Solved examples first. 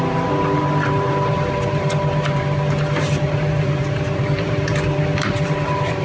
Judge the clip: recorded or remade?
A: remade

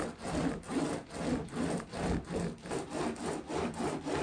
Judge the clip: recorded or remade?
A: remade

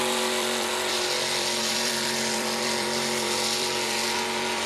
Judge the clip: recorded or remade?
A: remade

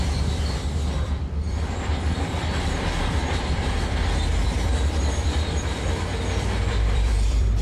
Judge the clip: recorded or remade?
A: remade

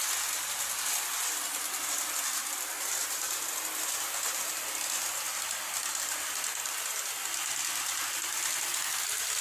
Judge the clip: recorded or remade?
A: recorded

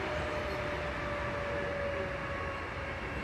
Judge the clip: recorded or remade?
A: recorded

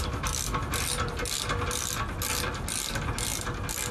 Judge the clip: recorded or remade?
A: recorded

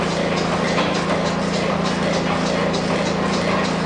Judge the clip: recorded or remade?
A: recorded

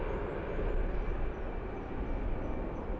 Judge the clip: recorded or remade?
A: recorded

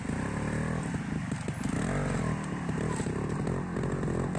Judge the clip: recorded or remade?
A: recorded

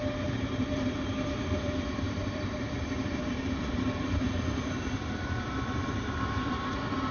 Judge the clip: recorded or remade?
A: remade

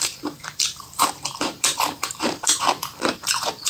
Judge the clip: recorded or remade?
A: remade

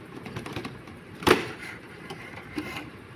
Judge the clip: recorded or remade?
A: remade